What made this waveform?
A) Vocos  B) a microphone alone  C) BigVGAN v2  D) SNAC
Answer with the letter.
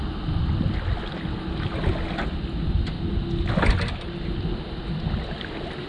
B